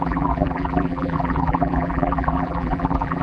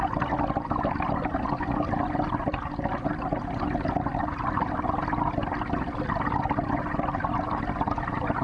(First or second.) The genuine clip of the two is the second